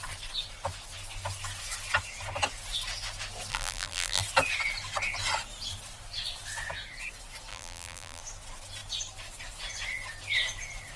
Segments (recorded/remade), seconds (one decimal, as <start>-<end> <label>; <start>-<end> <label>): 0.0-3.5 recorded; 3.5-4.2 remade; 4.2-7.5 recorded; 7.5-8.2 remade; 8.2-11.0 recorded

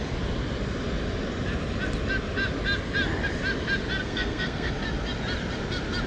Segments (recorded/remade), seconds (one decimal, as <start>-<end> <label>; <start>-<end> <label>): 0.0-4.0 recorded; 4.0-4.7 remade; 4.7-6.1 recorded